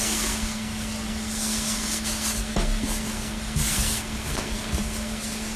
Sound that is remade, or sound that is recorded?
remade